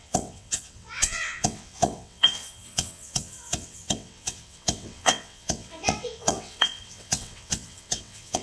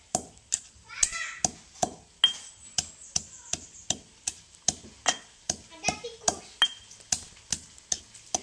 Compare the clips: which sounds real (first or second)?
second